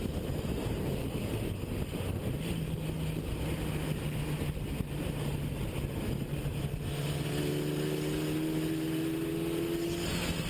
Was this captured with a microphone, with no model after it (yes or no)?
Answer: yes